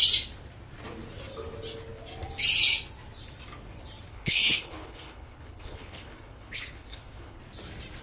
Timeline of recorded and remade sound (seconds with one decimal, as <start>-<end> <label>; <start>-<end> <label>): 0.0-4.1 recorded; 4.1-7.4 remade; 7.4-8.0 recorded